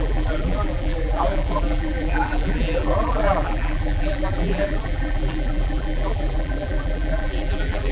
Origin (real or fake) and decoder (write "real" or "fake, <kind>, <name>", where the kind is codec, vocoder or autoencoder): fake, vocoder, BigVGAN v2